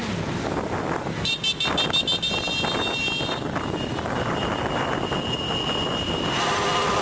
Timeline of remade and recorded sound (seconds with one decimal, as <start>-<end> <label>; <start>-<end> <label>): 0.0-7.0 recorded